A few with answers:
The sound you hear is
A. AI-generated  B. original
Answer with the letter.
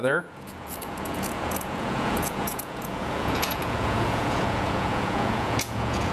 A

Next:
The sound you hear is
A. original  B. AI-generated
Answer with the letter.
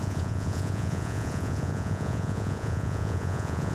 B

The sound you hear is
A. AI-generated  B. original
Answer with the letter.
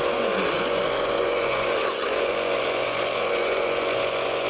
A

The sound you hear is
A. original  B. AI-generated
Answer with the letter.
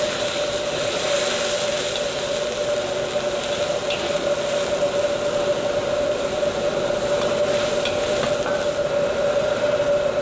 A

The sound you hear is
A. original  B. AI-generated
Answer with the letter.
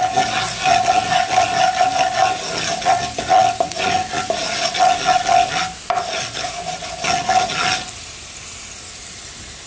A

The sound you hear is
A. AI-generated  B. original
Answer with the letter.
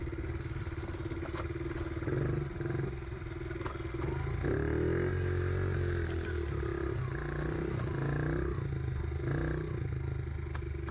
B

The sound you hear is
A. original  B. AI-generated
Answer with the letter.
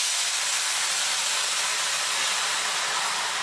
A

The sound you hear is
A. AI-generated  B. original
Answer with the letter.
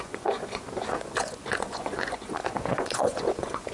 A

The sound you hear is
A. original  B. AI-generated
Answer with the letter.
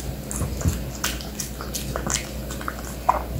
A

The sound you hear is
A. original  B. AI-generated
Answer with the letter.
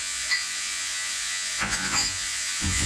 B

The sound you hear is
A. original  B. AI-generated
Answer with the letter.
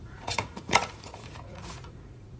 B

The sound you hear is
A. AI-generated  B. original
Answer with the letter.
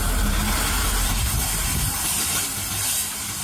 B